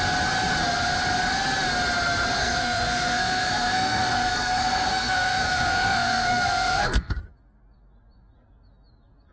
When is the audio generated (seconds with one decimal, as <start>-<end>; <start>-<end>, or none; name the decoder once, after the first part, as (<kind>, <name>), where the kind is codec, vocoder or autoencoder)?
2.4-7.1 (codec, SNAC)